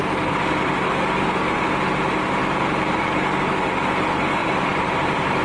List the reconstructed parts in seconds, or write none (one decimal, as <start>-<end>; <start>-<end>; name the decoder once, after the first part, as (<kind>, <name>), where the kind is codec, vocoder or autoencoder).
2.4-3.0 (vocoder, BigVGAN v2); 4.4-5.4